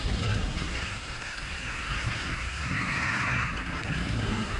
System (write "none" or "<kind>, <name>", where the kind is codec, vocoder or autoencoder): codec, SNAC